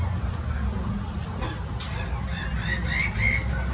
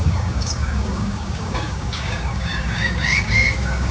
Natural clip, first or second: first